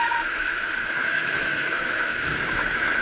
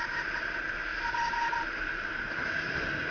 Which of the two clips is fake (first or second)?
first